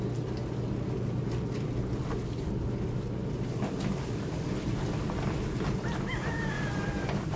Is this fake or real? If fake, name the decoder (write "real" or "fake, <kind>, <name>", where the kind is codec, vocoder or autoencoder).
real